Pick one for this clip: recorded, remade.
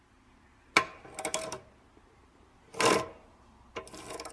recorded